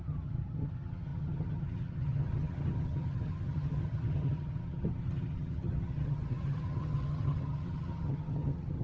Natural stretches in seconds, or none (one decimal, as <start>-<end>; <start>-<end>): none